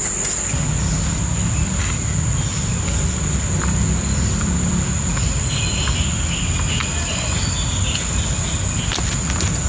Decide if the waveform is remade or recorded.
recorded